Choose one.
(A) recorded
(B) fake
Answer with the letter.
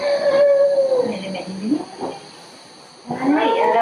A